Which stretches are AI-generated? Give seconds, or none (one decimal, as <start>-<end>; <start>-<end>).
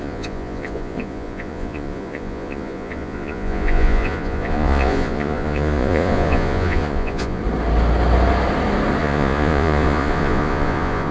0.0-7.4; 9.0-11.1